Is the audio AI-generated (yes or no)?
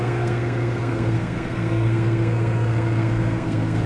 yes